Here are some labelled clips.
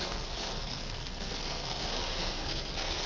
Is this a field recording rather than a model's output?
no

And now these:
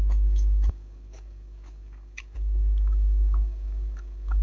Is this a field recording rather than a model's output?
no